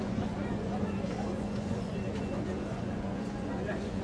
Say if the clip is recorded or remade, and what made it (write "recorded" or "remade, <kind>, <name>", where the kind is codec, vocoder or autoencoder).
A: remade, vocoder, Vocos